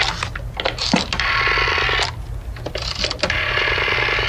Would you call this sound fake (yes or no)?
no